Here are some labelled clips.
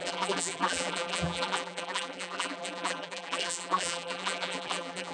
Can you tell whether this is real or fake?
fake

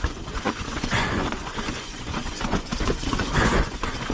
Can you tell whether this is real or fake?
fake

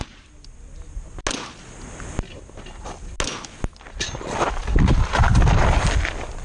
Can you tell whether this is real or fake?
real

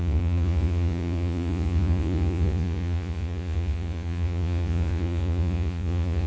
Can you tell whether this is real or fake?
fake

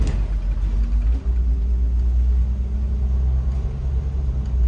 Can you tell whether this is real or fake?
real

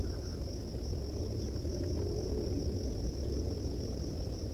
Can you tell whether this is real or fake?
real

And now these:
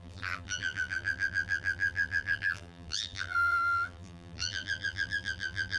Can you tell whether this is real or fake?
fake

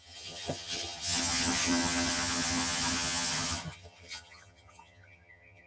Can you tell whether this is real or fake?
fake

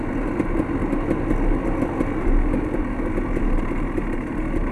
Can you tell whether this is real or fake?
real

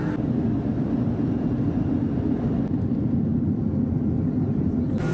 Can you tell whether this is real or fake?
real